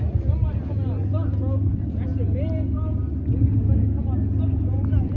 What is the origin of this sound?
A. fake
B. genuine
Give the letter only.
B